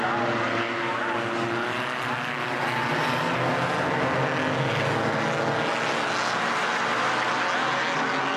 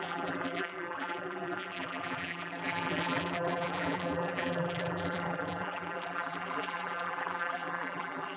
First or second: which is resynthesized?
second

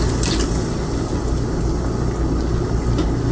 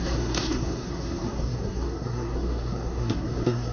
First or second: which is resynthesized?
second